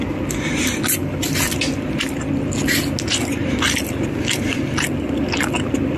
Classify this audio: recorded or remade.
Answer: recorded